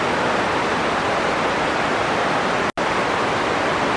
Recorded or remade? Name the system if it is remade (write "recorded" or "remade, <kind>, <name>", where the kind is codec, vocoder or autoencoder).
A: recorded